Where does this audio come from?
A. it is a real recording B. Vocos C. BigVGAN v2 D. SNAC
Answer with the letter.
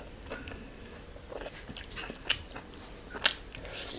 A